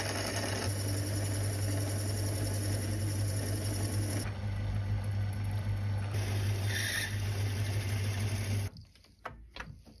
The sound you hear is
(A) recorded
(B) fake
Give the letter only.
A